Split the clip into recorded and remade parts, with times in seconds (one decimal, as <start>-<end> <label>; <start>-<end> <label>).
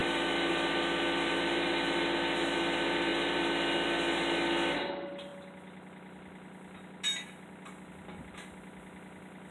0.0-0.5 remade; 0.5-9.5 recorded